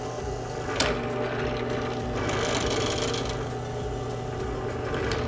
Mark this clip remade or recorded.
recorded